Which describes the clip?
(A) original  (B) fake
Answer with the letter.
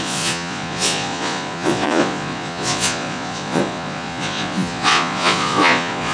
B